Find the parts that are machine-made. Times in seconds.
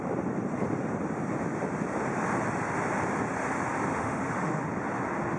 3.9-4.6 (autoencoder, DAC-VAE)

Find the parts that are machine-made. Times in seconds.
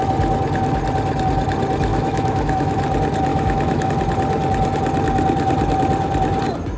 1.9-2.8 (autoencoder, DAC-VAE); 3.3-3.9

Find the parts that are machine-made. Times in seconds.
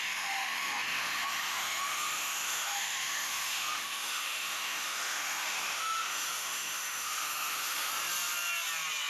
0.0-7.9 (autoencoder, DAC-VAE)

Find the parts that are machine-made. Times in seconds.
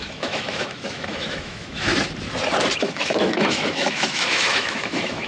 0.0-1.9 (autoencoder, DAC-VAE); 2.8-5.3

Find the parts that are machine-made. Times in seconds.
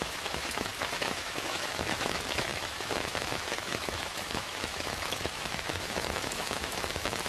0.0-7.3 (autoencoder, DAC-VAE)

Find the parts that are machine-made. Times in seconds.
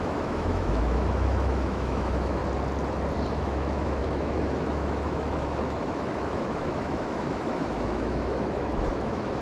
0.0-2.4 (autoencoder, DAC-VAE); 3.3-9.4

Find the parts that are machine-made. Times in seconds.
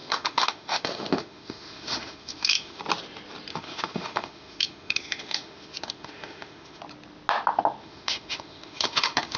0.0-2.8 (autoencoder, DAC-VAE); 3.5-6.8; 7.8-9.4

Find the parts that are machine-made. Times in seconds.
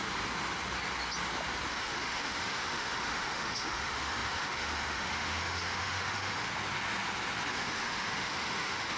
1.7-6.5 (autoencoder, DAC-VAE); 7.5-9.0